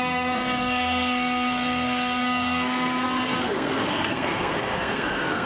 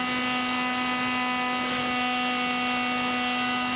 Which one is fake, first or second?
first